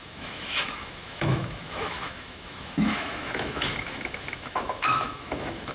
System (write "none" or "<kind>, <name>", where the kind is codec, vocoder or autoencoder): autoencoder, DAC-VAE